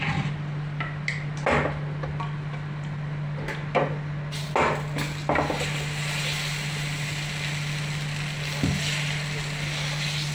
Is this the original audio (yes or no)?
yes